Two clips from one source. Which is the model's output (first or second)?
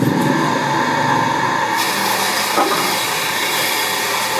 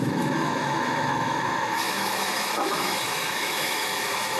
second